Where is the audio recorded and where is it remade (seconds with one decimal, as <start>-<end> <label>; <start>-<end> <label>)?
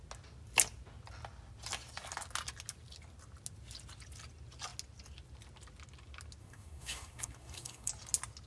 0.0-6.4 recorded; 6.4-7.9 remade; 7.9-8.5 recorded